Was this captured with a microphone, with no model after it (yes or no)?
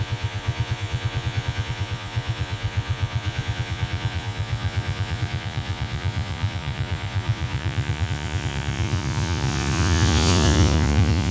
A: no